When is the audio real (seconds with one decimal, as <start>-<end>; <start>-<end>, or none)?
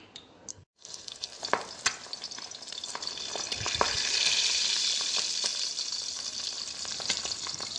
0.0-0.5; 1.4-7.8